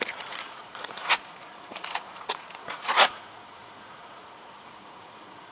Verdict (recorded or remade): remade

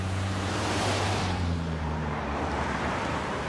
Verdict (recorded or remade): remade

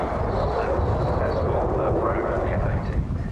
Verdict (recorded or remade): recorded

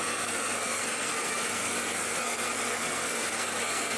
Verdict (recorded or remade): remade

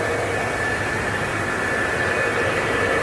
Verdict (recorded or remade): recorded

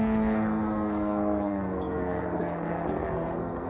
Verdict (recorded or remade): remade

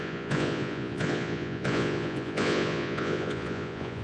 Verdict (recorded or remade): remade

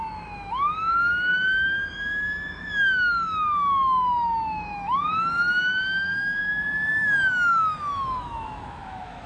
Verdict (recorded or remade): remade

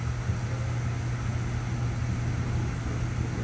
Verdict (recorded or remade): recorded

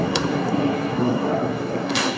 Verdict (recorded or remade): remade